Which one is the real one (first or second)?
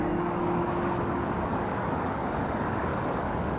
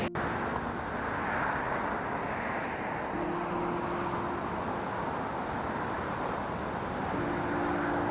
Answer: second